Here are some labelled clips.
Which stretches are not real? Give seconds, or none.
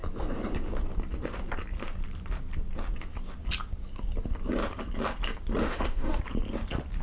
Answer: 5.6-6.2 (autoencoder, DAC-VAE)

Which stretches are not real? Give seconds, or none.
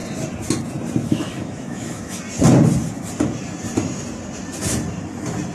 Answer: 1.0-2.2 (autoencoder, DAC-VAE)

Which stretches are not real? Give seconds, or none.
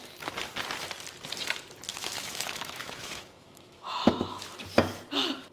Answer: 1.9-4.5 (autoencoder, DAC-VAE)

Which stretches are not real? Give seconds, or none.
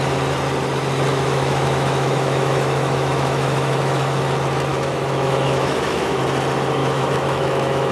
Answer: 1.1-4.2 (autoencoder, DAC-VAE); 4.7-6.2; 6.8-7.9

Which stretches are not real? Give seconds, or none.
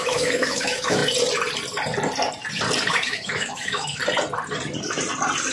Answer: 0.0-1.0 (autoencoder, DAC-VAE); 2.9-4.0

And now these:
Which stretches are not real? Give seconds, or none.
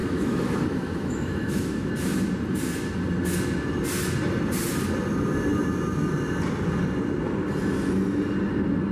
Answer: 0.0-1.9 (autoencoder, DAC-VAE)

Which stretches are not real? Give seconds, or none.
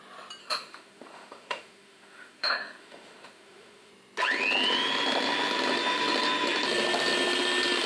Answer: 0.4-3.9 (autoencoder, DAC-VAE)